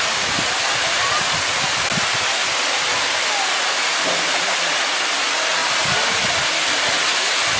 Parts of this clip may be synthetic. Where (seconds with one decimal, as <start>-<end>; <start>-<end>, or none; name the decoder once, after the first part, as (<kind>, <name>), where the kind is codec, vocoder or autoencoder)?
5.6-6.3 (vocoder, BigVGAN v2)